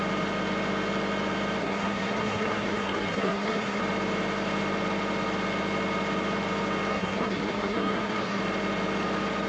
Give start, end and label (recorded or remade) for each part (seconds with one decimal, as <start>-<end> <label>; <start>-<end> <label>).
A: 0.0-1.6 recorded; 1.6-3.8 remade; 3.8-6.9 recorded; 6.9-8.4 remade; 8.4-9.5 recorded